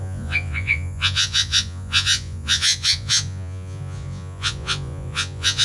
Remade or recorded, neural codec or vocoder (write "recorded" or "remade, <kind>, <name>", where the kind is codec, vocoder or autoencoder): remade, vocoder, Vocos